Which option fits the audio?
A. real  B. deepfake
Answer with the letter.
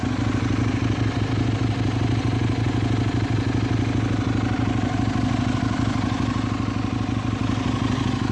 A